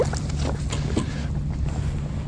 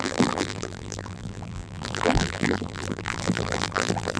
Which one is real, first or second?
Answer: first